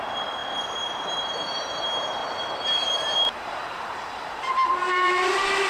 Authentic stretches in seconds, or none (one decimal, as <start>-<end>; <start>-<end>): 0.0-2.2